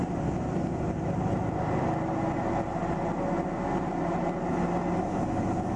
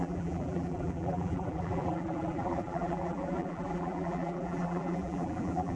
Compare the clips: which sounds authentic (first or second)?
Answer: first